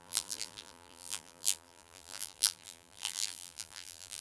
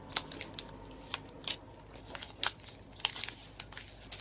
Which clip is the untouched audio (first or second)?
second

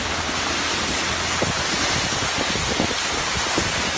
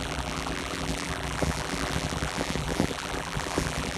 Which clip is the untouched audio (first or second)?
first